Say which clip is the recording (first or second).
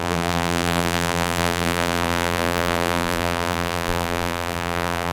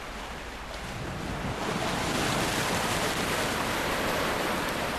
second